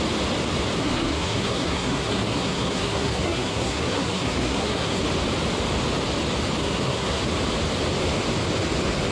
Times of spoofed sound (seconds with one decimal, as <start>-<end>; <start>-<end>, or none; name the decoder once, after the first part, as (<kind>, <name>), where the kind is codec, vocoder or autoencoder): 0.8-5.0 (codec, SNAC); 6.6-7.2